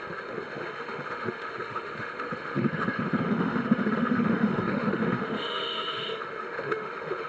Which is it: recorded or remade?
remade